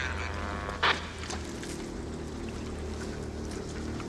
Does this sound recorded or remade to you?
recorded